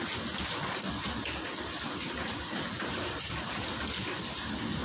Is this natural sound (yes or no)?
yes